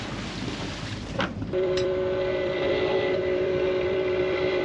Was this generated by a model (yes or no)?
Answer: yes